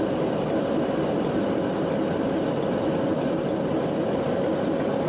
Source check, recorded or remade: recorded